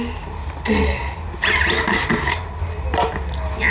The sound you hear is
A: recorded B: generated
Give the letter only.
A